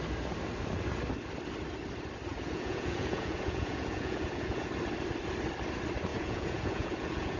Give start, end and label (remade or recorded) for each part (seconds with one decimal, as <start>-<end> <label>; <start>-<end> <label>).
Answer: 0.0-2.3 recorded; 2.3-4.7 remade; 4.7-6.1 recorded; 6.1-7.4 remade